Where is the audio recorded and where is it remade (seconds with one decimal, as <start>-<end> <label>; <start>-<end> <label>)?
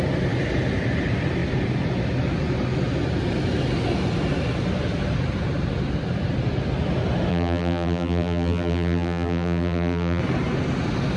0.0-7.3 recorded; 7.3-10.2 remade; 10.2-11.2 recorded